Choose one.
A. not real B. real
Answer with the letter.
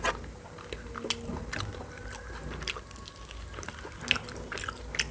B